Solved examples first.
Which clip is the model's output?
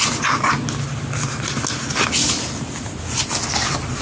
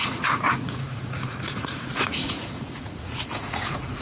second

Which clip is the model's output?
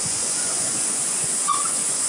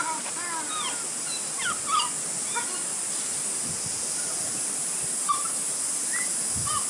first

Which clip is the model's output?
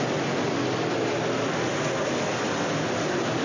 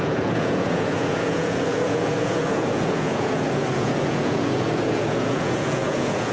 second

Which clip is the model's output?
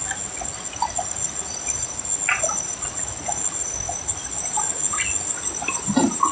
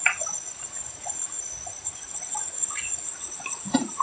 second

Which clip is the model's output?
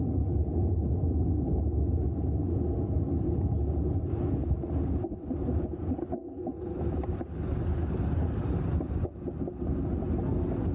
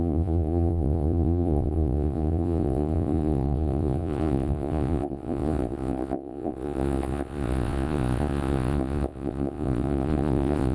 second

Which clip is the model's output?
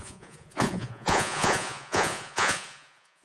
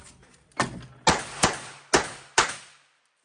first